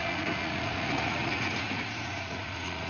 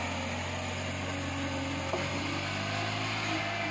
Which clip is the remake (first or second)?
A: first